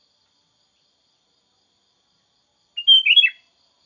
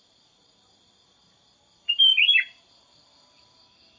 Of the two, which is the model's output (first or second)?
second